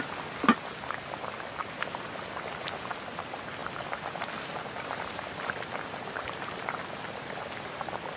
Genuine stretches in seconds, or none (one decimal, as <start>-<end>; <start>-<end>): 0.0-8.2